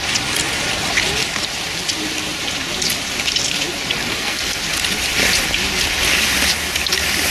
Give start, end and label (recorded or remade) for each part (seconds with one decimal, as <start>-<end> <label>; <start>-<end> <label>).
0.0-4.1 recorded; 4.1-4.6 remade; 4.6-7.3 recorded